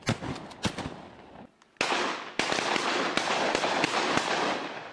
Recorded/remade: recorded